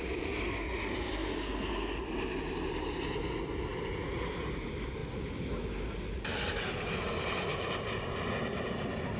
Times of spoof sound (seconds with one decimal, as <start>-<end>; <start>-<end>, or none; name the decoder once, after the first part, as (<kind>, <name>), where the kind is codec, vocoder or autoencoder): none